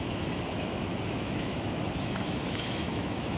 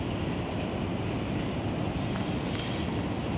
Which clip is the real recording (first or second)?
second